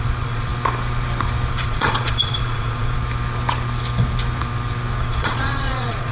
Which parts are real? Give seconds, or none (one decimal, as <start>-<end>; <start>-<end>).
0.5-1.5; 3.0-5.0